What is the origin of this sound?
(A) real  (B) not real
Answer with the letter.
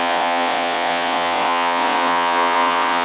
B